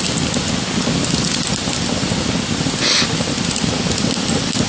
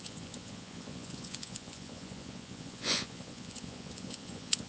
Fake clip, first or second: second